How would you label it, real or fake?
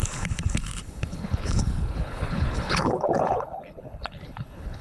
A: fake